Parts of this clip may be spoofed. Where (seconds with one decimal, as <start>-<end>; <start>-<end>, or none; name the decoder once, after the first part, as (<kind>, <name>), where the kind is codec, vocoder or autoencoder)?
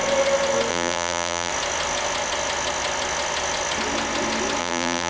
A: 0.7-1.5 (vocoder, BigVGAN v2); 4.6-5.1